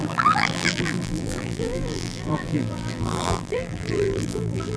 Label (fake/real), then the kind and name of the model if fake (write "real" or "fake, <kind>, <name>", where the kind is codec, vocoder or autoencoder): fake, vocoder, BigVGAN v2